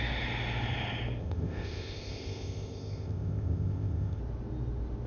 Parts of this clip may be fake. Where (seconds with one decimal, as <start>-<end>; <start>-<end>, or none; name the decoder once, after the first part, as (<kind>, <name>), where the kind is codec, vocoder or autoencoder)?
1.2-4.2 (codec, ZipCodec)